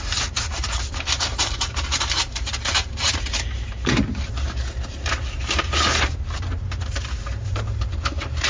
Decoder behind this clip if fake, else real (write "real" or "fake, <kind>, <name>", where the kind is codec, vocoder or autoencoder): fake, vocoder, BigVGAN v2